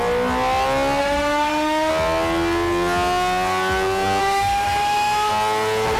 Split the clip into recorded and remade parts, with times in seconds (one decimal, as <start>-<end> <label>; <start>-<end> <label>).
0.0-1.0 recorded; 1.0-1.9 remade; 1.9-4.2 recorded; 4.2-5.3 remade; 5.3-6.0 recorded